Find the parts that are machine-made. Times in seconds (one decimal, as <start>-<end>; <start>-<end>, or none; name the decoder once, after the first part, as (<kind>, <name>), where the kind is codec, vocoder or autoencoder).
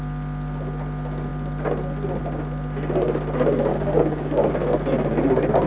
3.7-4.5 (codec, DAC)